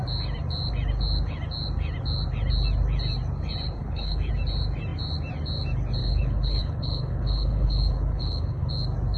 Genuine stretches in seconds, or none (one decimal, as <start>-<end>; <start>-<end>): 0.0-3.8; 4.3-6.0; 8.7-9.2